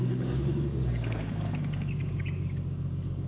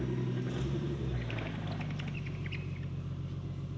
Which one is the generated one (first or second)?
first